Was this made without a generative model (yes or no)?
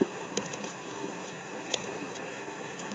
no